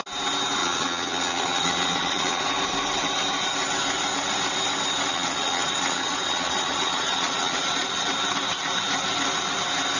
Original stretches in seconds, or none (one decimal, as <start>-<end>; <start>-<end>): 0.0-0.6; 2.4-5.1; 8.1-10.0